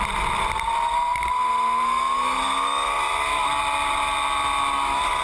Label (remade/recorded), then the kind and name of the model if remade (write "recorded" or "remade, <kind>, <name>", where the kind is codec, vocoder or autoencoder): recorded